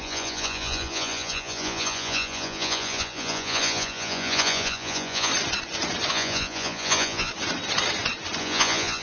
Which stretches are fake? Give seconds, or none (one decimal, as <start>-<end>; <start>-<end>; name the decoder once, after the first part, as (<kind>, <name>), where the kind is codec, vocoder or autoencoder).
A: 0.0-5.3 (vocoder, Vocos); 6.1-7.3; 8.4-9.0